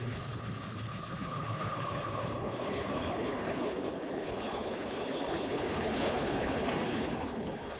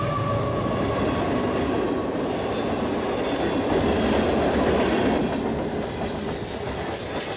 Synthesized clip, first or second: first